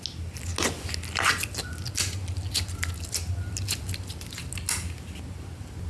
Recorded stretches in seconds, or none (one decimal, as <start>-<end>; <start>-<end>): 0.0-5.9